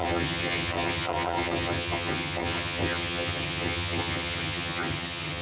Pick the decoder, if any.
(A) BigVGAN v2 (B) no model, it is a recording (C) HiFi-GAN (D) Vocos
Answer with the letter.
C